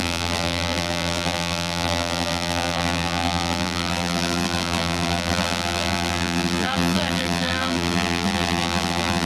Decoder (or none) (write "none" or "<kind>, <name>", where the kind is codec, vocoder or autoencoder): vocoder, BigVGAN v2